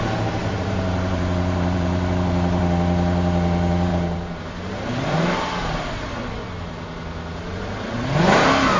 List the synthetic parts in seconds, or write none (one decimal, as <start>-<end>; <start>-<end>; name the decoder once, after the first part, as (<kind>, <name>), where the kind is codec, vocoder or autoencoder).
0.4-2.6 (vocoder, BigVGAN v2); 3.9-5.9